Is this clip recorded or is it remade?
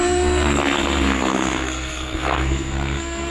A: remade